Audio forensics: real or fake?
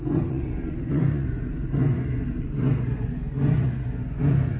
fake